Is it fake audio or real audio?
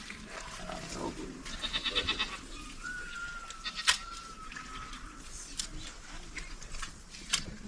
real